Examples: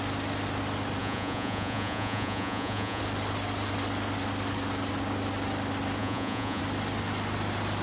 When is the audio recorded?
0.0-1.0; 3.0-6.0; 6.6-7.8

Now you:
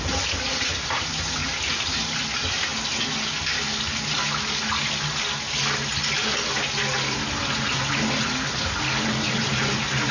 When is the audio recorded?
0.0-10.1